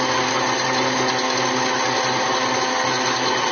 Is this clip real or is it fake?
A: real